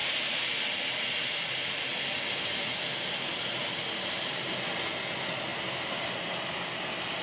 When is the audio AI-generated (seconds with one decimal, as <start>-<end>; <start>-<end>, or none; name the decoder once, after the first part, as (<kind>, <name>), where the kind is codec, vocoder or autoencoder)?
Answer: none